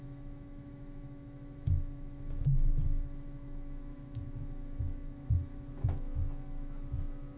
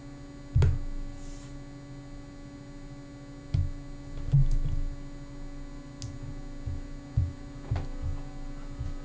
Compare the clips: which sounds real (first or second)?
second